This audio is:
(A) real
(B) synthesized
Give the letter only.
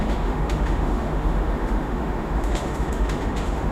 B